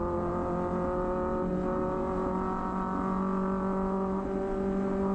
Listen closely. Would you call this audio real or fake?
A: real